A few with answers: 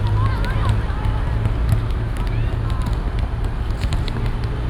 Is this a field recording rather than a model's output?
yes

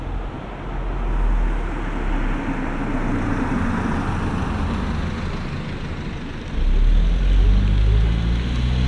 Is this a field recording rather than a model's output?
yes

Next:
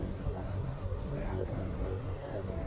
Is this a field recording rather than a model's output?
no